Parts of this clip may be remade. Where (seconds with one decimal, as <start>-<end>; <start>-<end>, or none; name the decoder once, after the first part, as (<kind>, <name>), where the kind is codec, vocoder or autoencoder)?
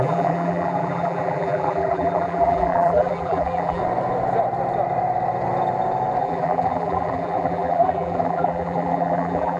0.0-3.8 (vocoder, BigVGAN v2); 6.2-9.6